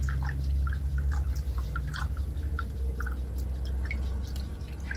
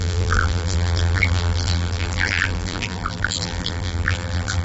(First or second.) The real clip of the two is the first